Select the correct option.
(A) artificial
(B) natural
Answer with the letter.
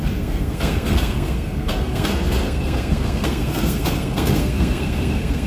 A